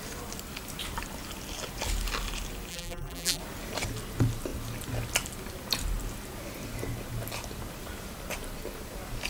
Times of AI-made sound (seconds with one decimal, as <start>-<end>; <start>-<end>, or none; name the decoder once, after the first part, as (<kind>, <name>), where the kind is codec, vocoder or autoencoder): 2.7-3.4 (vocoder, BigVGAN v2)